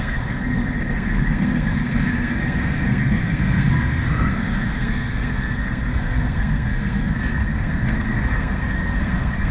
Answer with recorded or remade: remade